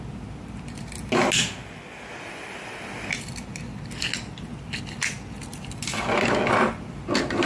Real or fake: real